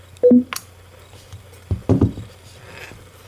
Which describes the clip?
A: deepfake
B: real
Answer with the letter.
B